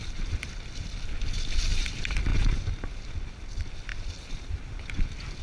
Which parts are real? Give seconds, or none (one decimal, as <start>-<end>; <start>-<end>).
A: 0.0-5.4